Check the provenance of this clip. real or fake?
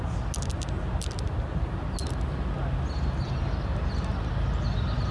real